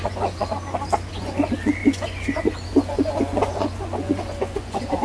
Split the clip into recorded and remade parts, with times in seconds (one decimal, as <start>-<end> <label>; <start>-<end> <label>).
0.0-0.5 remade; 0.5-1.1 recorded; 1.1-5.0 remade